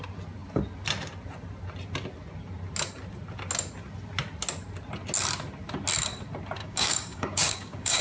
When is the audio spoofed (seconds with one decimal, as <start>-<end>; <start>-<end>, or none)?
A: 6.6-8.0